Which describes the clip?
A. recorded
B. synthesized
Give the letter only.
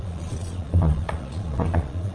B